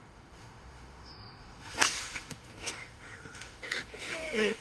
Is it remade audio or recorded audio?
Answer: remade